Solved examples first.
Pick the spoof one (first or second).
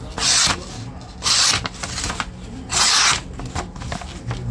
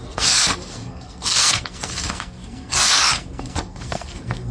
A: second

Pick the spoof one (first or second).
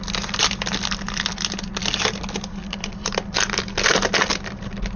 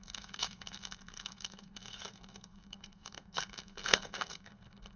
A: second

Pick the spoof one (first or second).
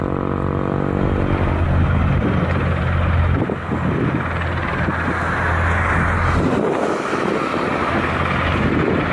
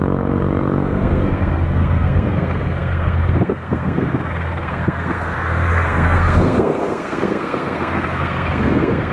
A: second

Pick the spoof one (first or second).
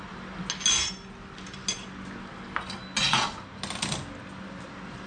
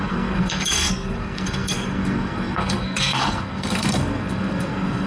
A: second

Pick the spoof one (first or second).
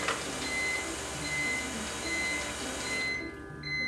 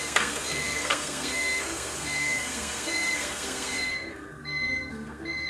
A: second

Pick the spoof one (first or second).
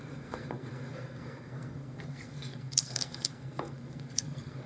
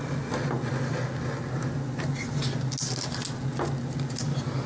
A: first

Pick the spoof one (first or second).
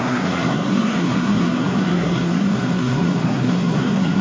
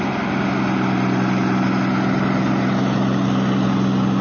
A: first